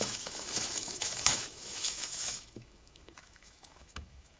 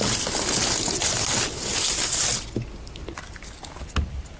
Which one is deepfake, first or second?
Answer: first